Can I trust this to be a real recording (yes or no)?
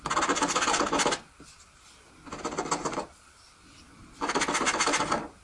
yes